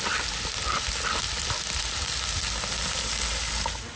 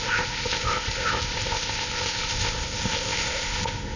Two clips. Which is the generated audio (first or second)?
second